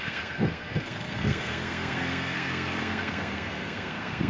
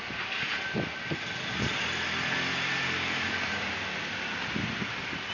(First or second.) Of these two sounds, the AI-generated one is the first